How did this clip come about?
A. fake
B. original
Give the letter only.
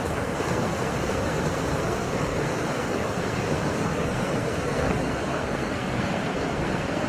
A